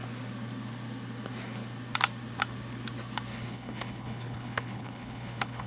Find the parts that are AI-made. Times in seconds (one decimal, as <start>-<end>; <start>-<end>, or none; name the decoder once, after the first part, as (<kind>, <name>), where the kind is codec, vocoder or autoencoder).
3.3-5.7 (codec, HILCodec)